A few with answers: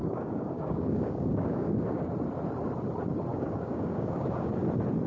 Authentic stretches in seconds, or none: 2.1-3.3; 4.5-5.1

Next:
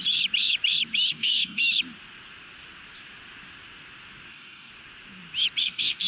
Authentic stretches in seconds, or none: 0.0-1.1; 1.6-4.3; 4.7-5.6